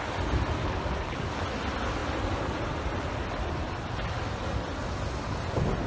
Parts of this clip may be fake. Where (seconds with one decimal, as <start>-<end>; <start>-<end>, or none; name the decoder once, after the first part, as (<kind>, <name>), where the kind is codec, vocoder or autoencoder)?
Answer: 0.6-1.4 (codec, DAC)